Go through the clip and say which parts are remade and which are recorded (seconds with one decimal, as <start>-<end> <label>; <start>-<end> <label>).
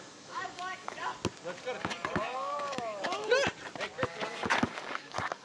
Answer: 0.0-1.1 remade; 1.1-1.8 recorded; 1.8-3.3 remade; 3.3-4.1 recorded; 4.1-5.4 remade